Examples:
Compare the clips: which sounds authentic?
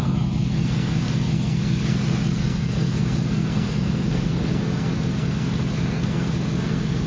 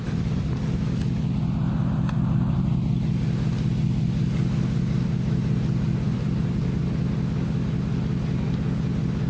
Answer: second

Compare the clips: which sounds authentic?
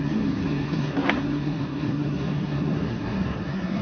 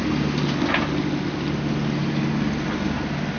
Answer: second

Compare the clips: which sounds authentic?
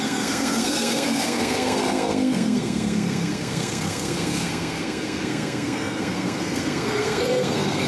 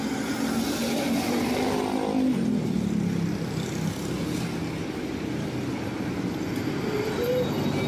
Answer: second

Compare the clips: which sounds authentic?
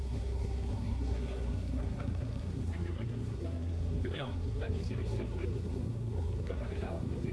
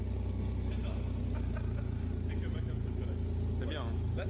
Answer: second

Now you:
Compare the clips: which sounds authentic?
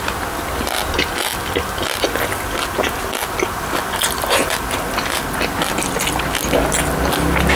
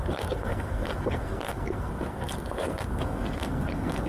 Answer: first